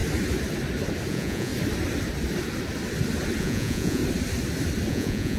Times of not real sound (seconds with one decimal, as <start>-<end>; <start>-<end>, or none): 1.1-1.5; 3.4-4.0; 4.9-5.4